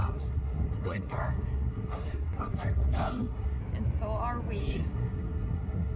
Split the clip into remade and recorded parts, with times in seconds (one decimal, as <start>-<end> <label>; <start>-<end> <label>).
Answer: 0.0-3.6 remade; 3.6-4.6 recorded; 4.6-6.0 remade